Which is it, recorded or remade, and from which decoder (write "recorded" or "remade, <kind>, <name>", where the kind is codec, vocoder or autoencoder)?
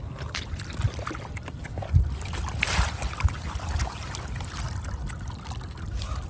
recorded